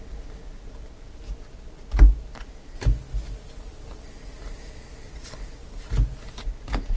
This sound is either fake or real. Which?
real